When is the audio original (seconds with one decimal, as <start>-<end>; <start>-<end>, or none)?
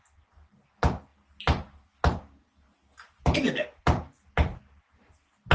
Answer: 0.0-5.5